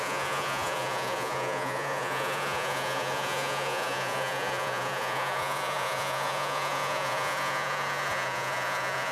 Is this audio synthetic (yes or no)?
yes